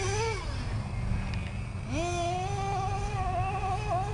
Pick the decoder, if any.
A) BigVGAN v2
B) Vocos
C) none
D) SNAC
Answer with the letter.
C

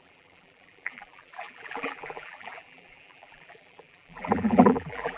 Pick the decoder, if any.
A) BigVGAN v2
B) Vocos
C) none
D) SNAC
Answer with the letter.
A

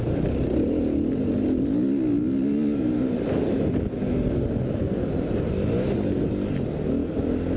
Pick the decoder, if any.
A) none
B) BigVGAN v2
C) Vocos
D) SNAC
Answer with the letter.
A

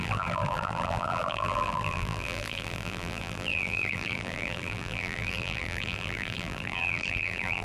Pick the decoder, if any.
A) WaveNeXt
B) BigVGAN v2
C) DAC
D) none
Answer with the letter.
B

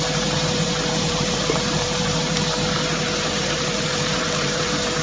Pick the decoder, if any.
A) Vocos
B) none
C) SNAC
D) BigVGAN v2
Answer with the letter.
D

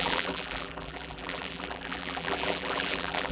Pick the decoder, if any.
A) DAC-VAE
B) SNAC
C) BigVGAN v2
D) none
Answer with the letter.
C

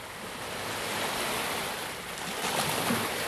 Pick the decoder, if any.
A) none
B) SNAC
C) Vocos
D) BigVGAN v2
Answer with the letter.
A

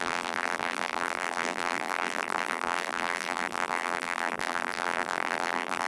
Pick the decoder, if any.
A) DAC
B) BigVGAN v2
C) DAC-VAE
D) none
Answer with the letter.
B